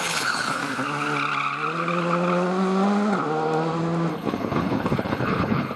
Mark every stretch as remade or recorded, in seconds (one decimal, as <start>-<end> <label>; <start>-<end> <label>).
0.0-0.6 remade; 0.6-4.1 recorded; 4.1-5.8 remade